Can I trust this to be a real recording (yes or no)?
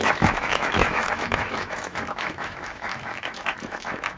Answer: no